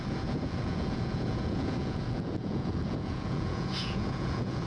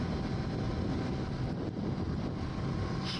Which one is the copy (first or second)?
first